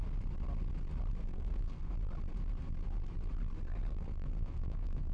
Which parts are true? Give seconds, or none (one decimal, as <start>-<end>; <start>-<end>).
0.0-1.2; 1.9-3.9